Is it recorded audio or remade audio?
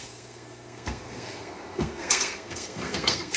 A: remade